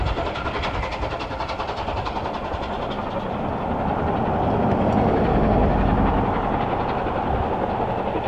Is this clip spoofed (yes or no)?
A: no